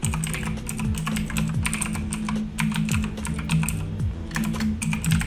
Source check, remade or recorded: recorded